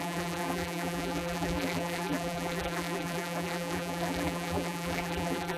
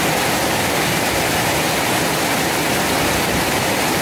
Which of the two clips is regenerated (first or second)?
first